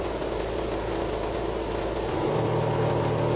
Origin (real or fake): real